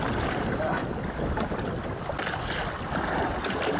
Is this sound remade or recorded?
recorded